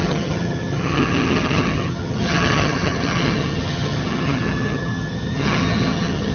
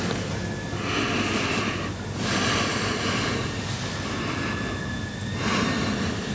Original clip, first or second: second